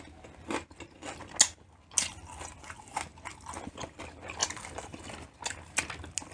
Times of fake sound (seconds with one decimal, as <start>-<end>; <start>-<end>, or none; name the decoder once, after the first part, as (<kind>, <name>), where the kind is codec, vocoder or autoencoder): 4.4-5.1 (vocoder, BigVGAN v2)